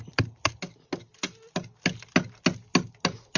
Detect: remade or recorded recorded